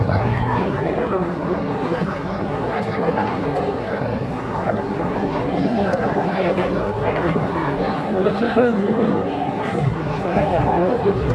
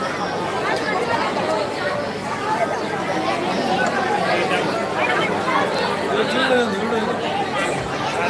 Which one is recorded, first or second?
second